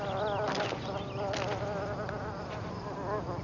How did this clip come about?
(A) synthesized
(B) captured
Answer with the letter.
B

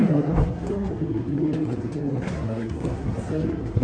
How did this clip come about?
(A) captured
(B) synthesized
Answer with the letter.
B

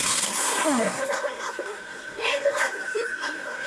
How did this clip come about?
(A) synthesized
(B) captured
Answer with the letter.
A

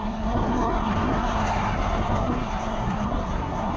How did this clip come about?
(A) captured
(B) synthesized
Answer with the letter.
B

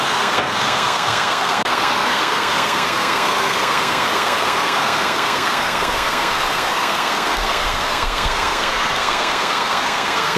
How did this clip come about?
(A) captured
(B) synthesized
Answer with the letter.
B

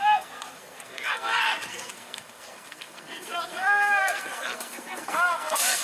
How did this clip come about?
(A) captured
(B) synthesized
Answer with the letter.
B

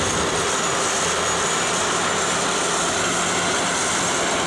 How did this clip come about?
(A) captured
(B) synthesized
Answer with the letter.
A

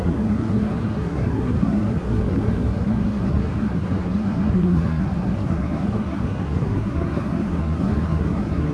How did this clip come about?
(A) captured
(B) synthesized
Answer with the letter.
B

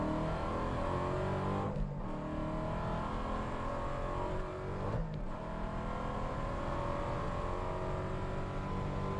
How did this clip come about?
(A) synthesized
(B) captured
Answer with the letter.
B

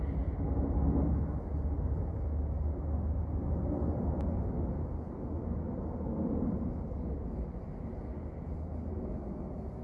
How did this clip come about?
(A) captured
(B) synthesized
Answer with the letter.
A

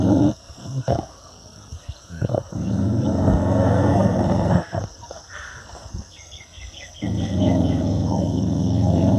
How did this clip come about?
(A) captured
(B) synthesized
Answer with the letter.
B